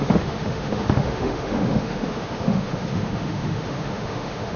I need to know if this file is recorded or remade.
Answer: remade